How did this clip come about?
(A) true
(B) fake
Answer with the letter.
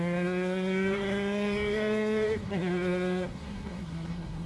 B